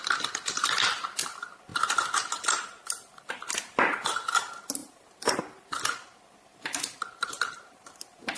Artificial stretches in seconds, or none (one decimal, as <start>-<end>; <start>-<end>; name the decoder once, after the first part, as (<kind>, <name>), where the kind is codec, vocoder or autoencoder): none